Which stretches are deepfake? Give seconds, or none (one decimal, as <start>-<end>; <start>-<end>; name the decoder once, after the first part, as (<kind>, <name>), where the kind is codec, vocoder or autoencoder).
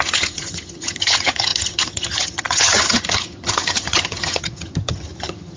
0.0-5.6 (vocoder, HiFi-GAN)